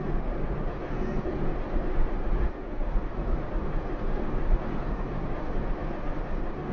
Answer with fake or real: fake